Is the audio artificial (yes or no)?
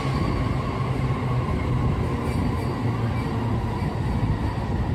no